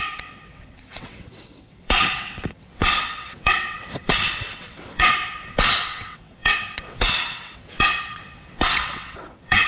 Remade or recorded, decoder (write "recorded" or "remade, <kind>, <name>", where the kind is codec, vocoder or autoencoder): remade, vocoder, WaveNeXt